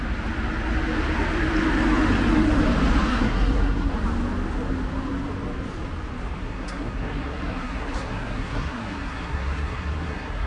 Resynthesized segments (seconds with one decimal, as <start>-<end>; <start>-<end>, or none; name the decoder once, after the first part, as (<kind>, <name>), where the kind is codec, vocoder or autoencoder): 3.1-3.9 (codec, SNAC); 6.4-10.5

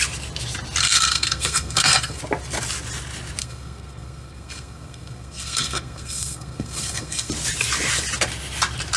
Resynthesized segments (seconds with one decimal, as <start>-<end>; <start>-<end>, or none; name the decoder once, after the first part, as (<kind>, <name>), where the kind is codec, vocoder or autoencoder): 0.8-2.2 (codec, SNAC); 3.4-7.3

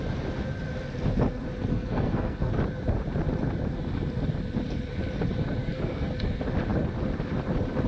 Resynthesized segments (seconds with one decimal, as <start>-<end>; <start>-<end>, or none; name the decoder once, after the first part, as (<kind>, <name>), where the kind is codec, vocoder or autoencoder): 1.7-2.5 (codec, SNAC); 5.6-6.1

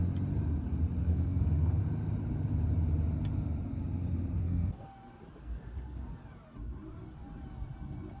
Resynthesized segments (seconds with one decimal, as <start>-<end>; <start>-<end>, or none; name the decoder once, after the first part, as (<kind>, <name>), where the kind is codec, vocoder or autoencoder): 1.0-1.8 (codec, SNAC); 4.4-4.9; 5.4-6.1